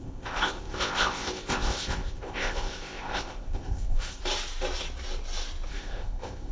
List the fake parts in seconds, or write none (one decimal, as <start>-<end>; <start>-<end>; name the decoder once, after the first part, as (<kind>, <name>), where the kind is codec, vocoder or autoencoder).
0.0-4.2 (codec, ZipCodec); 5.7-6.5